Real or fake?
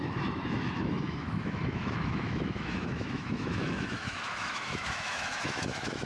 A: fake